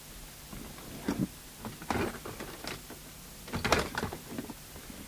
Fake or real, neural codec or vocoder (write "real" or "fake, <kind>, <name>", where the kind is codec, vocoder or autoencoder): real